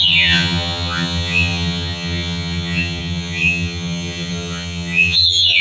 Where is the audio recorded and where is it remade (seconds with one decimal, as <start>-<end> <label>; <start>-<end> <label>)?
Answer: 0.0-5.6 remade